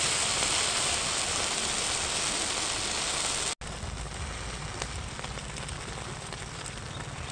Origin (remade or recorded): recorded